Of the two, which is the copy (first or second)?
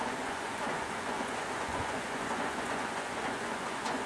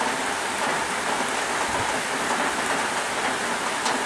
first